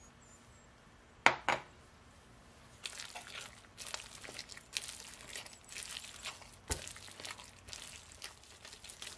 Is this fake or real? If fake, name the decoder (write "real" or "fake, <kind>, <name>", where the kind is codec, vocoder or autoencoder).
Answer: real